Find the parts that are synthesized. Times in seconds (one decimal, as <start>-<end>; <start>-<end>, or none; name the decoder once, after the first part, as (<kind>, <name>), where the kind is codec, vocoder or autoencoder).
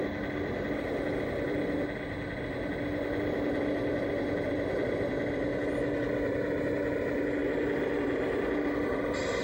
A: none